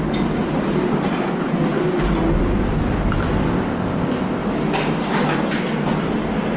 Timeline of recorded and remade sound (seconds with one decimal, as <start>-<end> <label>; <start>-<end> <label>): 0.0-3.5 recorded; 3.5-4.4 remade; 4.4-6.6 recorded